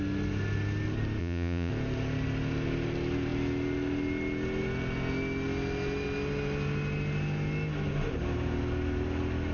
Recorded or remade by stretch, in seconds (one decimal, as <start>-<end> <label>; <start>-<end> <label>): 0.0-1.2 recorded; 1.2-1.7 remade; 1.7-9.5 recorded